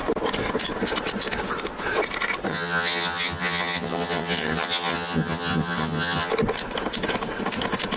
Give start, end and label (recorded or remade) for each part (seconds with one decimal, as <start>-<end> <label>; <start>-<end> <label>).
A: 0.0-2.5 recorded; 2.5-6.3 remade; 6.3-8.0 recorded